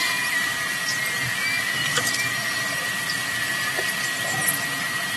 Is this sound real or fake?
real